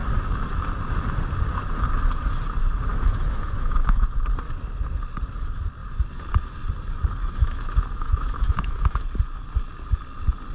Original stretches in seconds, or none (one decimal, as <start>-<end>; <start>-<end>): 0.0-2.9; 4.1-7.4; 9.0-10.5